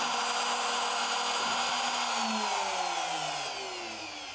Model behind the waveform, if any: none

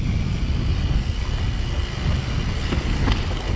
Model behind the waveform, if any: none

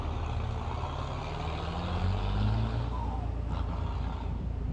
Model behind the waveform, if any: none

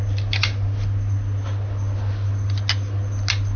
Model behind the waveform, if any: none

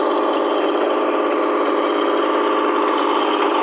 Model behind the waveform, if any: none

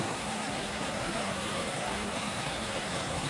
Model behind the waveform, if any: codec, SNAC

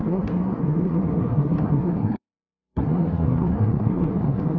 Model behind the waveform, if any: codec, SNAC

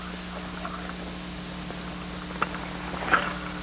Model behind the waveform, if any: none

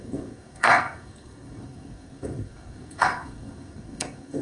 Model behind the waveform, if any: codec, SNAC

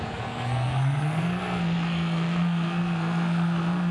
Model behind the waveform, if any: codec, SNAC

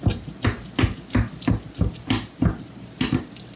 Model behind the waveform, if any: none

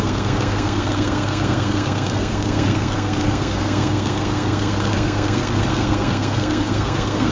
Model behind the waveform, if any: codec, SNAC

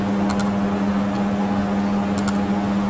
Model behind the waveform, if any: none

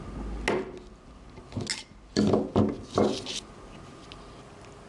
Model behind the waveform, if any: none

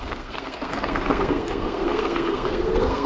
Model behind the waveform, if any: codec, SNAC